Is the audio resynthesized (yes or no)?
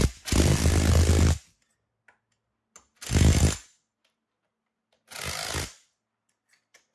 no